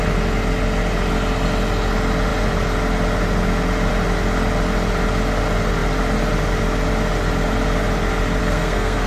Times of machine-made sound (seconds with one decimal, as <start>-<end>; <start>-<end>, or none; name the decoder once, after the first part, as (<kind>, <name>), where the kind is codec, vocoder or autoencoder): 8.4-9.1 (codec, SNAC)